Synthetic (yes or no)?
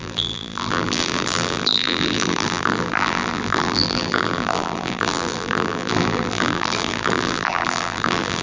yes